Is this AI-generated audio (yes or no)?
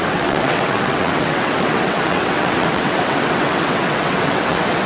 yes